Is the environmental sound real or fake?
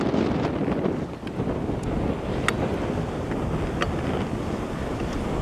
real